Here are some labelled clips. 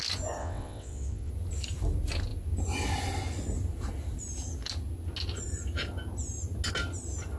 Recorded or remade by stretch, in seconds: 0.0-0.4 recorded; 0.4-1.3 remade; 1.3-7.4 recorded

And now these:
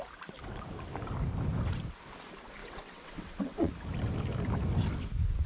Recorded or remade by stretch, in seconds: 0.0-2.6 recorded; 2.6-3.7 remade; 3.7-5.5 recorded

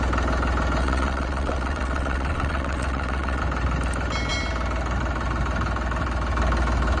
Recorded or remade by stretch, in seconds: 0.0-0.8 recorded; 0.8-3.4 remade; 3.4-7.0 recorded

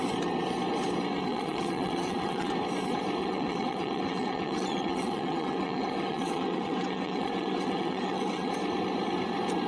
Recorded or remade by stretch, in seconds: 0.0-1.3 recorded; 1.3-2.5 remade; 2.5-3.2 recorded; 3.2-8.5 remade; 8.5-9.7 recorded

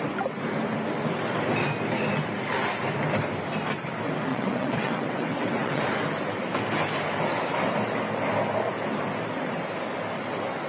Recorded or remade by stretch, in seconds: 0.0-4.3 recorded; 4.3-5.8 remade; 5.8-10.7 recorded

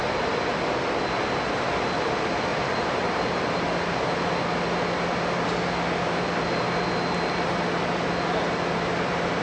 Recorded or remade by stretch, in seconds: 0.0-9.4 recorded

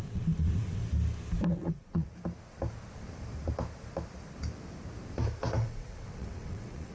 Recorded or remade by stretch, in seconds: 0.0-0.8 remade; 0.8-1.5 recorded; 1.5-2.1 remade; 2.1-5.6 recorded; 5.6-6.9 remade

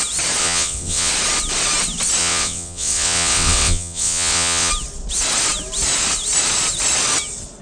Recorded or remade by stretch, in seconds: 0.0-0.4 recorded; 0.4-1.1 remade; 1.1-2.2 recorded; 2.2-4.7 remade; 4.7-7.6 recorded